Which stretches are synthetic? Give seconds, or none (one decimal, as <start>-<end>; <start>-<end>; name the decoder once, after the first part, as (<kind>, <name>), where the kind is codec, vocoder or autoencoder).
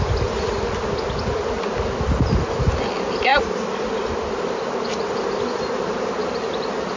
6.2-7.0 (vocoder, BigVGAN v2)